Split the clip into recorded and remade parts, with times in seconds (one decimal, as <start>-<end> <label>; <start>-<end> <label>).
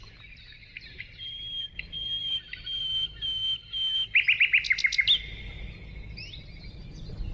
0.0-2.8 remade; 2.8-6.7 recorded; 6.7-7.3 remade